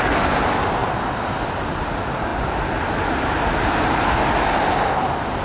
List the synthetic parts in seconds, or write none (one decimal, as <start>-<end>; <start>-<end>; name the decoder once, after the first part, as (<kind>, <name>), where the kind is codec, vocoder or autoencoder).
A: none